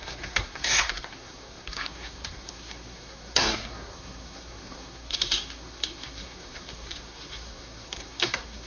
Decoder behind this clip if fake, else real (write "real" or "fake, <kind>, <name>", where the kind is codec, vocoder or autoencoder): fake, codec, SNAC